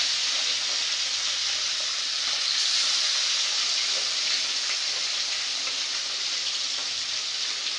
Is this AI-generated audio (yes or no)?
no